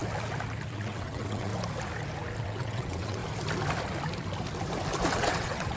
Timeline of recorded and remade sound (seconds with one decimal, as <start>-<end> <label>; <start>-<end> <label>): 0.0-0.7 recorded; 0.7-1.5 remade; 1.5-2.4 recorded; 2.4-3.2 remade; 3.2-5.1 recorded; 5.1-5.8 remade